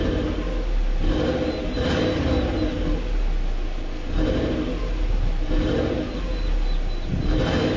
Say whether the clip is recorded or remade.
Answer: recorded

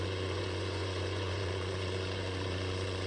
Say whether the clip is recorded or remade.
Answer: remade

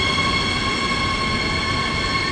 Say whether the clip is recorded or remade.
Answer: recorded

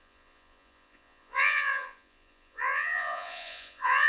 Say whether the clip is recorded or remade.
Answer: remade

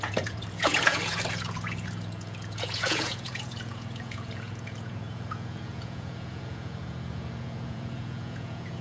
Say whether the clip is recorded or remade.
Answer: remade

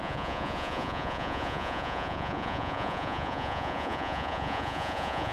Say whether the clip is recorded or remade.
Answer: remade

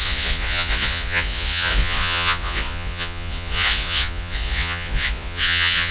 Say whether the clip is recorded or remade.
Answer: remade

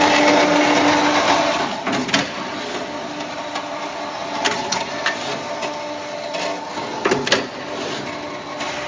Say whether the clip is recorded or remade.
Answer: recorded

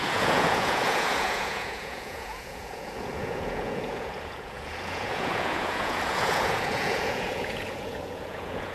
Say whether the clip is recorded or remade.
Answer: remade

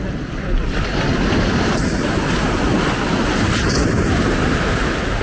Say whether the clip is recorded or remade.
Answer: recorded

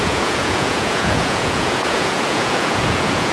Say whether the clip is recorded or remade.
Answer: remade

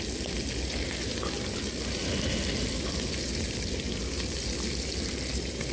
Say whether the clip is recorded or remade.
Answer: recorded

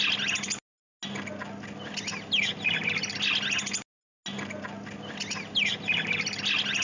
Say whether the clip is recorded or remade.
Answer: recorded